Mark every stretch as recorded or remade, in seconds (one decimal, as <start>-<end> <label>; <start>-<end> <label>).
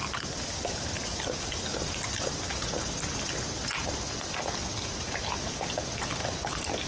0.0-6.9 recorded